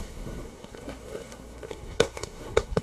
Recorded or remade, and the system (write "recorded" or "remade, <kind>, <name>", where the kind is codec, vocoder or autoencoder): remade, codec, SNAC